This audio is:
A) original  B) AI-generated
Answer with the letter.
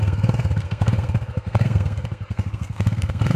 B